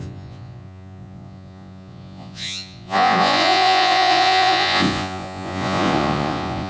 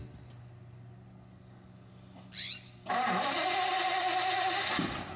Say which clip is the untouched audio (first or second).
second